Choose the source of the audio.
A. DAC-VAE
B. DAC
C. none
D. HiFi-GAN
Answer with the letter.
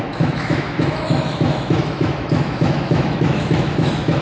A